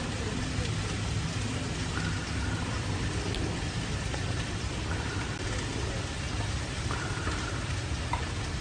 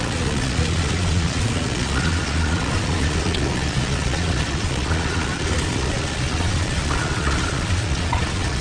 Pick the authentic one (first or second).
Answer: first